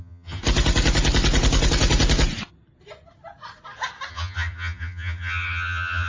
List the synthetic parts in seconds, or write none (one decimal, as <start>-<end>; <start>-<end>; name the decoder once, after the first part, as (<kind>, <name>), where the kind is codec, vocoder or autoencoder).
0.0-0.4 (vocoder, HiFi-GAN); 4.1-6.1